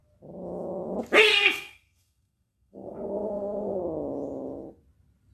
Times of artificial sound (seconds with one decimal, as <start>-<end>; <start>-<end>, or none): 1.3-3.8